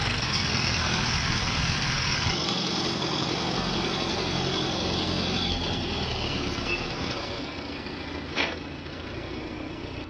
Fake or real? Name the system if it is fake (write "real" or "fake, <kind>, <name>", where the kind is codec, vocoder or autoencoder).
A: fake, codec, SNAC